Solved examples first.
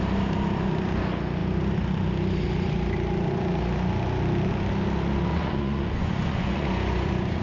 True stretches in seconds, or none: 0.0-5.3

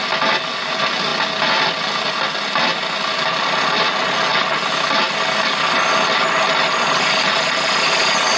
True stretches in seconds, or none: 0.0-8.4

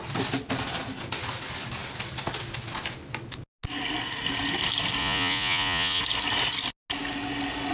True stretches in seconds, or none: 0.0-5.0; 6.0-7.7

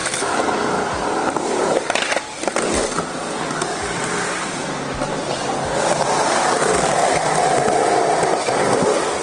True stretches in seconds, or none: 0.0-9.2

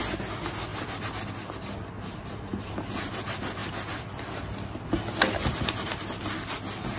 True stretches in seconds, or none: 0.0-7.0

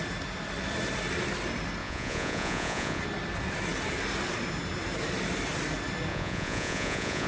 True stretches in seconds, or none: 0.0-1.8; 3.0-6.1